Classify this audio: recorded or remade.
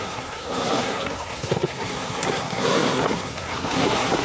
remade